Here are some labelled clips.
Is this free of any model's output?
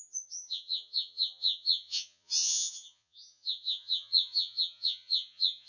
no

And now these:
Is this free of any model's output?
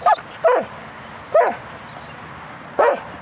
yes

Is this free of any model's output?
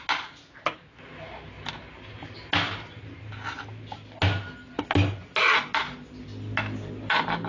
yes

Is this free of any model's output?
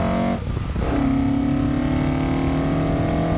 yes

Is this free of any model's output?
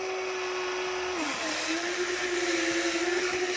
yes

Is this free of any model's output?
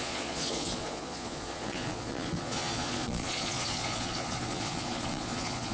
no